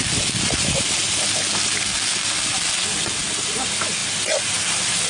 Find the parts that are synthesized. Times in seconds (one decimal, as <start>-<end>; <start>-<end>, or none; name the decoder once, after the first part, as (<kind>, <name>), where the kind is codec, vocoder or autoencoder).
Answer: none